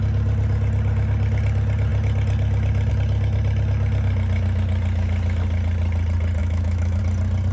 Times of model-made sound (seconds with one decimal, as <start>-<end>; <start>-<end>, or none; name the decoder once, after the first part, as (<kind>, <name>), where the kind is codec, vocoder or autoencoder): 6.4-7.0 (autoencoder, DAC-VAE)